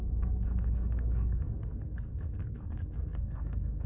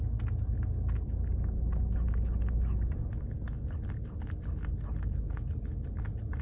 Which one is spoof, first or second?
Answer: first